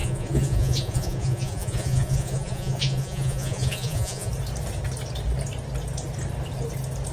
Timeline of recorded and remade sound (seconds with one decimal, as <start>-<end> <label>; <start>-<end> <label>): 0.0-4.3 remade; 4.3-7.1 recorded